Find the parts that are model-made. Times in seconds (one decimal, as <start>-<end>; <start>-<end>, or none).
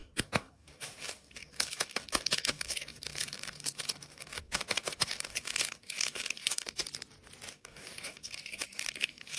0.0-6.8; 7.5-9.4